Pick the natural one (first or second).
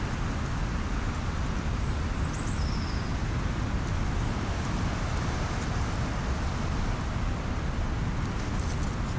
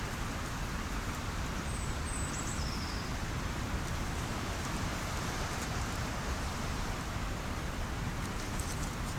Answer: first